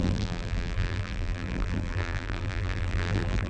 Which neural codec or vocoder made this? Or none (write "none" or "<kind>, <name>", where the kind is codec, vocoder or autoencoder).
vocoder, BigVGAN v2